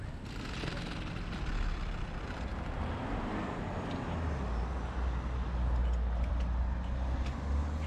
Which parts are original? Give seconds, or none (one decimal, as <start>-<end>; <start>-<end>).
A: 0.0-7.9